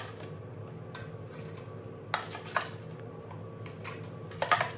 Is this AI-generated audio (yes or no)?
no